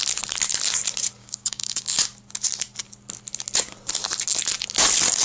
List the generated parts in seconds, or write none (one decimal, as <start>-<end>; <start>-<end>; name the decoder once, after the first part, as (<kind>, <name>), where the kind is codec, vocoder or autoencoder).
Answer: 1.2-1.8 (codec, DAC)